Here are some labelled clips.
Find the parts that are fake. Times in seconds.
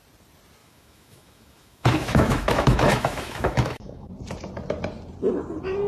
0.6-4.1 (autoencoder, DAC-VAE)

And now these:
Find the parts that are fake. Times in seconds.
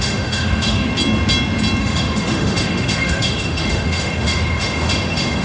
0.0-0.9 (autoencoder, DAC-VAE); 1.8-5.4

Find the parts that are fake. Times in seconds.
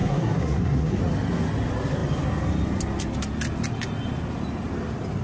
0.0-1.0 (codec, SNAC)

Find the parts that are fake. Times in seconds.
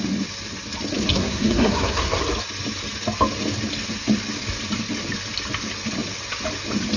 1.1-2.2 (codec, SNAC)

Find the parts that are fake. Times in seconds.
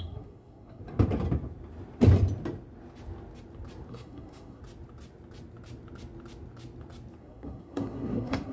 0.0-0.8 (codec, SNAC); 3.9-4.6; 7.2-8.5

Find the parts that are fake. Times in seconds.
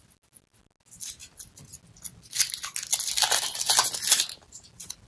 none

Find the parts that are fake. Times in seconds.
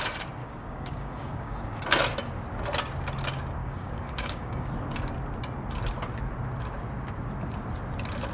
0.4-1.8 (codec, DAC); 3.6-4.7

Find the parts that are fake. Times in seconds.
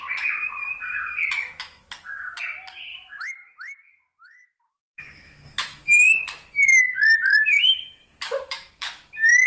1.4-2.4 (autoencoder, DAC-VAE); 2.9-6.8; 7.3-9.5